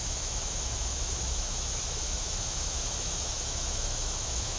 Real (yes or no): no